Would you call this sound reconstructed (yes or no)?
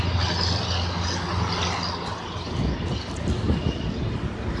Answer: no